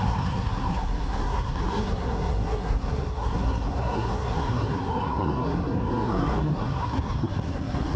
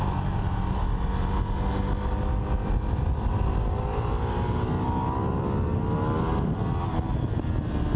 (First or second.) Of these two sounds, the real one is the second